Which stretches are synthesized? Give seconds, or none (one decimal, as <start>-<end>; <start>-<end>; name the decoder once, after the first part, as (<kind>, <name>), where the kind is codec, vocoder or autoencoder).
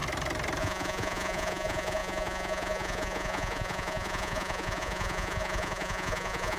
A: 0.6-6.6 (vocoder, Vocos)